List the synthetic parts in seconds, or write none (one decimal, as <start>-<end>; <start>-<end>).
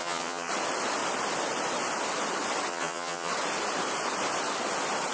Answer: 0.0-0.5; 2.7-3.3